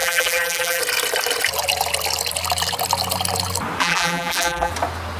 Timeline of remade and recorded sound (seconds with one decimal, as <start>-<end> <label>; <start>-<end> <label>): 0.0-0.8 remade; 0.8-3.8 recorded; 3.8-4.7 remade; 4.7-5.2 recorded